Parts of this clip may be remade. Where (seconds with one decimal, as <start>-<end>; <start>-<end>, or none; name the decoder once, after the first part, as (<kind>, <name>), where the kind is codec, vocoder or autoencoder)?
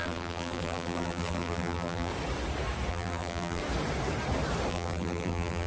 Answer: 0.0-2.1 (vocoder, BigVGAN v2); 2.9-3.6; 4.7-5.7